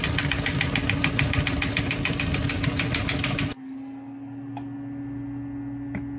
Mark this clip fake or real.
real